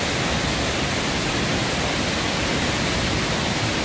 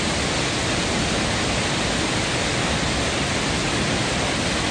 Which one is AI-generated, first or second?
first